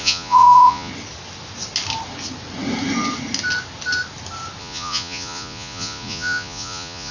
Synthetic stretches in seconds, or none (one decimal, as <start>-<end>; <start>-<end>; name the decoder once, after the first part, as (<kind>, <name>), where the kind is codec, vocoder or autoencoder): 0.0-0.9 (vocoder, Vocos); 4.6-7.1